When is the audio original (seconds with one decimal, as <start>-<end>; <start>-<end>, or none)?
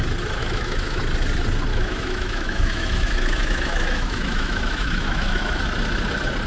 0.0-0.4; 1.0-1.7; 5.6-6.5